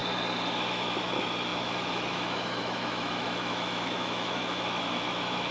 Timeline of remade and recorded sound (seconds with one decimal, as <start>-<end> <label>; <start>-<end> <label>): 0.0-0.5 recorded; 0.5-5.5 remade